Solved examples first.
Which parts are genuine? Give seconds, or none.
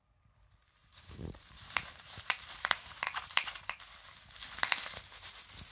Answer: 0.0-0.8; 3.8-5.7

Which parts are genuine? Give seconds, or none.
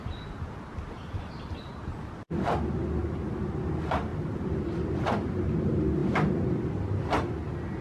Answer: 0.0-4.1; 4.6-7.8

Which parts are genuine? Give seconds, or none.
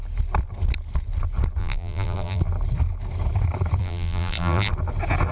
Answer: 0.0-1.6; 2.4-3.8; 4.7-5.3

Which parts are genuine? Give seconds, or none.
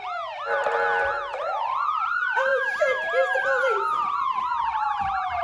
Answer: 2.5-4.2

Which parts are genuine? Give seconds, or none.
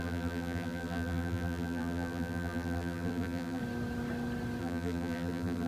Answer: 3.6-4.6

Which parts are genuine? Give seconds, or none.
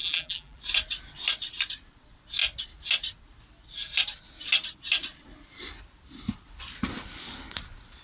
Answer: 0.6-8.0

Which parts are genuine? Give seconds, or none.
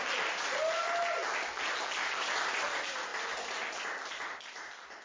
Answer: 0.0-5.0